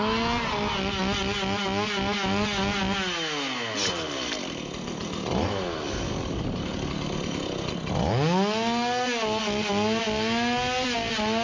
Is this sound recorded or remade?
recorded